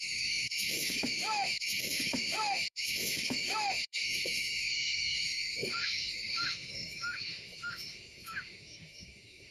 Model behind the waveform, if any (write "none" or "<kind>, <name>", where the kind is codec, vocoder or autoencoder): autoencoder, DAC-VAE